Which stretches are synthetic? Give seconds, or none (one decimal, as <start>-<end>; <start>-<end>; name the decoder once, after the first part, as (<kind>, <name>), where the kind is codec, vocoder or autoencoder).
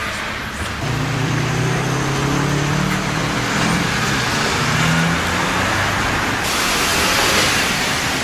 0.0-1.6 (vocoder, BigVGAN v2); 3.2-4.3